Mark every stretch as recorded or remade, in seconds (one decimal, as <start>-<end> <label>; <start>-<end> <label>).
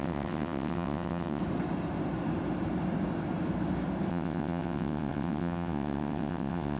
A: 0.0-1.4 remade; 1.4-4.1 recorded; 4.1-6.8 remade